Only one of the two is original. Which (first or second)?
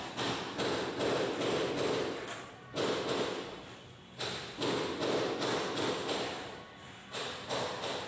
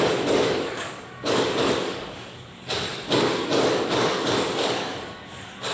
first